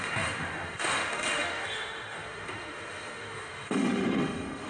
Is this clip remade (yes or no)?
yes